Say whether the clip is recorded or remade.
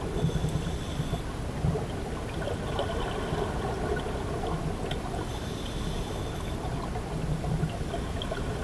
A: recorded